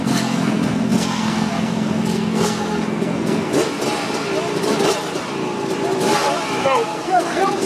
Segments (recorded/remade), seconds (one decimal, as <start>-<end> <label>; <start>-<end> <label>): 0.0-3.5 remade; 3.5-6.6 recorded; 6.6-7.7 remade